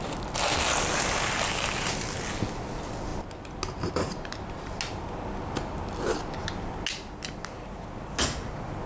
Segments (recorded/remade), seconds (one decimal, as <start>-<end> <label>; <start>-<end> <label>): 0.0-8.9 recorded